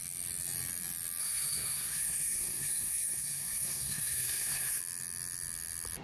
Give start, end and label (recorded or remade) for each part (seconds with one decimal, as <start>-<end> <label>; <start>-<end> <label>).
0.0-1.2 recorded; 1.2-4.8 remade; 4.8-6.0 recorded